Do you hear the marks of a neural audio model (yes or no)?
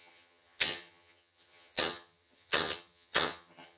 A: yes